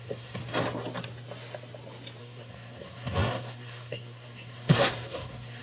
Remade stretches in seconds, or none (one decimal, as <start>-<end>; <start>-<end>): 0.0-0.4; 2.2-5.6